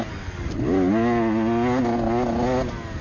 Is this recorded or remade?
recorded